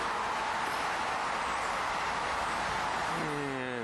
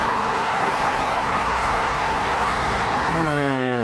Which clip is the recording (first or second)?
first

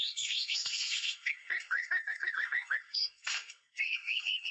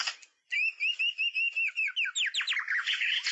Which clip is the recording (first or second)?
second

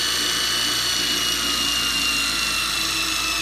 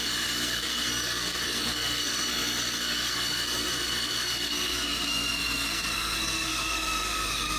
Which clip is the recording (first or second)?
first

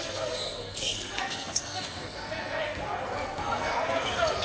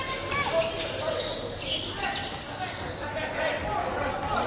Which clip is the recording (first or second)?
second